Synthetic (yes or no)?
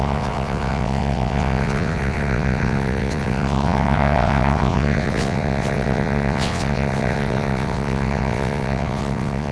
yes